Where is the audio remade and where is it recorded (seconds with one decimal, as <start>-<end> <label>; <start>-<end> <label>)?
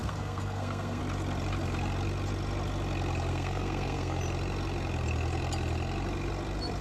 0.0-1.0 remade; 1.0-3.3 recorded; 3.3-4.2 remade; 4.2-6.8 recorded